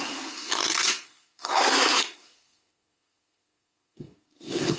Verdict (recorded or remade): remade